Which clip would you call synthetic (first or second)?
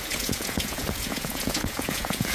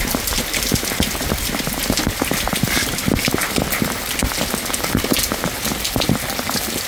first